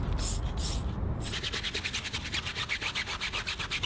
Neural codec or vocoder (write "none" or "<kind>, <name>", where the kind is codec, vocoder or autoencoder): none